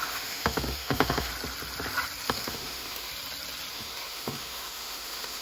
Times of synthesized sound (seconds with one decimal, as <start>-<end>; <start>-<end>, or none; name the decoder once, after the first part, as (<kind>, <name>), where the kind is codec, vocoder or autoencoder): 0.0-1.3 (autoencoder, DAC-VAE); 2.3-3.1; 3.7-5.4